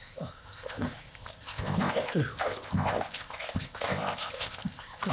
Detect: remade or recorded remade